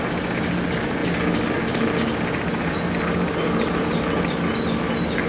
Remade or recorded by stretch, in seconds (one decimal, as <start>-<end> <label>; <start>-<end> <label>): 0.0-5.3 recorded

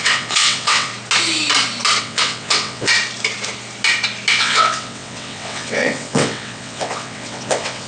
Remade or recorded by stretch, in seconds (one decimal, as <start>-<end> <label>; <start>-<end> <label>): 0.0-0.9 remade; 0.9-2.0 recorded; 2.0-2.9 remade; 2.9-4.3 recorded; 4.3-7.9 remade

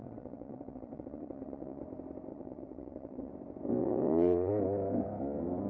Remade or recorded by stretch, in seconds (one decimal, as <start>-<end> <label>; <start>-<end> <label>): 0.0-1.8 remade; 1.8-2.3 recorded; 2.3-3.3 remade; 3.3-3.8 recorded; 3.8-4.5 remade; 4.5-5.7 recorded

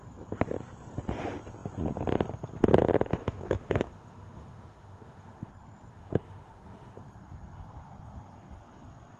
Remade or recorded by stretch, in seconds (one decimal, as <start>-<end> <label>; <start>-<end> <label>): 0.0-3.2 recorded; 3.2-5.5 remade; 5.5-5.9 recorded; 5.9-7.0 remade; 7.0-9.2 recorded